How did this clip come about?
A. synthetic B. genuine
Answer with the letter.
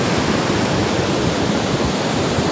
B